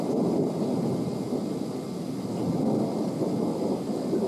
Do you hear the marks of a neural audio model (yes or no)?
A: no